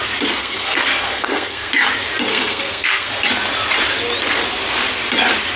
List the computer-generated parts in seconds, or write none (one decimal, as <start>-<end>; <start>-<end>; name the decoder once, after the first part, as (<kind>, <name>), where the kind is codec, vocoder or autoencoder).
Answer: 0.4-1.7 (codec, SNAC); 2.3-3.1